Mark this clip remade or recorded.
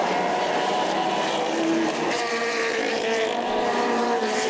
remade